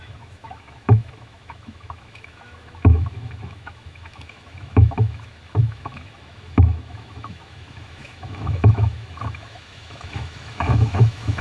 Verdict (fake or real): fake